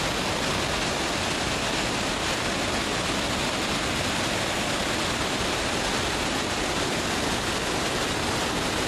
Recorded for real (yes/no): yes